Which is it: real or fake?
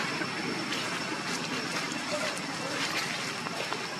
real